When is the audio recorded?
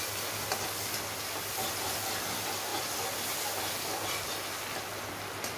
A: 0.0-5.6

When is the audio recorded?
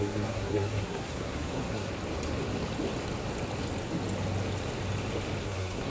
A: 1.9-5.4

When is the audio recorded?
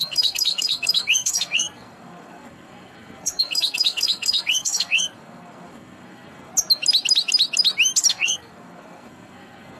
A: 6.5-8.1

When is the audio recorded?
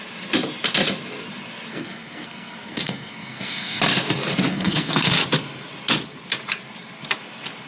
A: 0.0-1.7; 3.8-4.5; 5.1-7.7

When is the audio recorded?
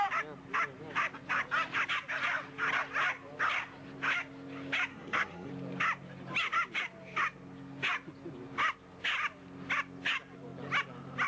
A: 0.0-4.9; 5.5-11.3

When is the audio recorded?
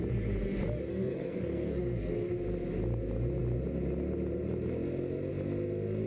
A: 0.0-0.9; 2.3-6.1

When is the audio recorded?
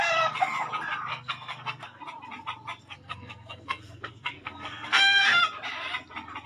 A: 0.0-1.1; 2.0-2.8; 5.4-6.5